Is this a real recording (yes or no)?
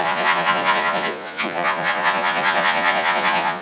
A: no